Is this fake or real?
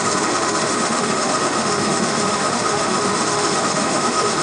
fake